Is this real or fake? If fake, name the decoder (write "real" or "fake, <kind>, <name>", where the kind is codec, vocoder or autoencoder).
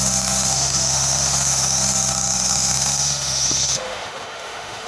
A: fake, autoencoder, DAC-VAE